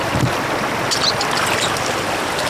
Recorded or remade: recorded